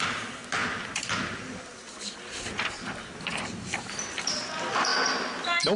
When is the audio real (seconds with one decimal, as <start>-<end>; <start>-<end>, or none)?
0.0-5.8